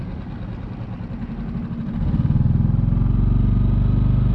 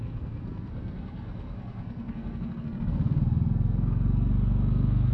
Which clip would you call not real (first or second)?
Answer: second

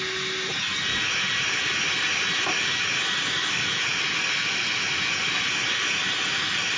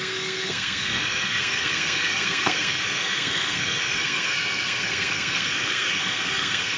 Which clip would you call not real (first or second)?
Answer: second